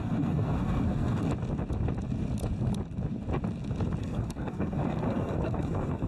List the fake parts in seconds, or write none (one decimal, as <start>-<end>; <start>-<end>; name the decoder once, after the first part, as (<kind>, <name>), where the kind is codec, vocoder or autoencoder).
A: 0.0-1.3 (codec, SNAC); 4.0-6.1